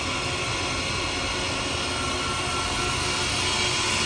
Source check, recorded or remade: recorded